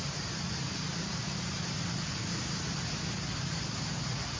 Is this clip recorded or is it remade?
remade